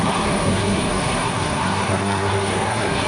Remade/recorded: remade